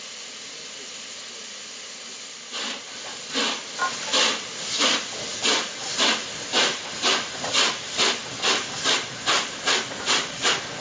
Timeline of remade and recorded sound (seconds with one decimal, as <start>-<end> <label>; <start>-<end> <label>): 0.0-10.8 recorded

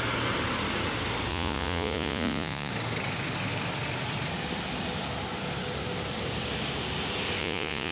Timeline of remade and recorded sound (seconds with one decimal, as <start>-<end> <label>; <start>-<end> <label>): 0.0-1.3 recorded; 1.3-2.7 remade; 2.7-7.4 recorded; 7.4-7.9 remade

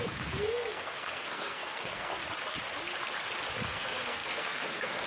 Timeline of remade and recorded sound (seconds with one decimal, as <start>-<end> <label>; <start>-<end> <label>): 0.0-2.2 remade; 2.2-3.7 recorded; 3.7-5.1 remade

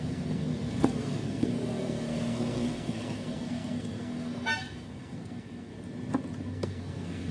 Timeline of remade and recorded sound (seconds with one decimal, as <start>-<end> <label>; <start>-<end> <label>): 0.0-5.7 remade; 5.7-6.5 recorded; 6.5-7.3 remade

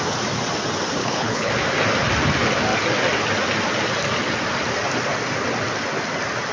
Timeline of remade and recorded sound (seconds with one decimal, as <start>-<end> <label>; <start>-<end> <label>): 0.0-1.0 recorded; 1.0-1.5 remade; 1.5-6.5 recorded